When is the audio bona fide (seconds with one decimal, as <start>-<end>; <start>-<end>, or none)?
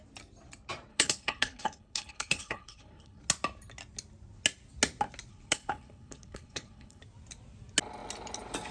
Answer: 0.0-0.9; 3.2-5.3; 7.0-8.7